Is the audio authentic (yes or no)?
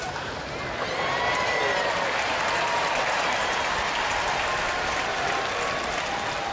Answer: yes